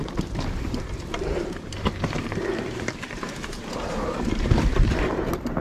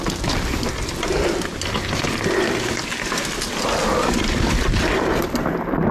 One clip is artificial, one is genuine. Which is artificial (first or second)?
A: first